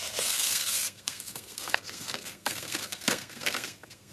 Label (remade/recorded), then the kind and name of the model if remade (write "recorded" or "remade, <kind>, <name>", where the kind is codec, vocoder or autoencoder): remade, codec, SNAC